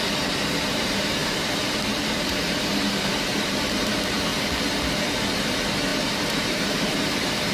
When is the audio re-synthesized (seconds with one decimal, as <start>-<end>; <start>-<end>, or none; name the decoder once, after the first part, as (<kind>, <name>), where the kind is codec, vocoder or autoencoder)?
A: 0.0-4.3 (vocoder, BigVGAN v2); 5.4-7.5